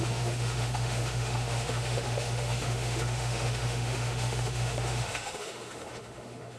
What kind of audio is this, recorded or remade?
remade